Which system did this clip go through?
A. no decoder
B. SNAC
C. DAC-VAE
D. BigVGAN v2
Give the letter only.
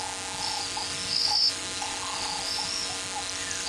A